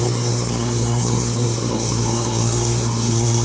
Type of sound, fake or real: fake